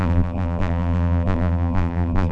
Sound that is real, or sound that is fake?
fake